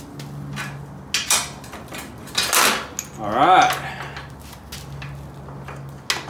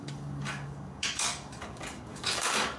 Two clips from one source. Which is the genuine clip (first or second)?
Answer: first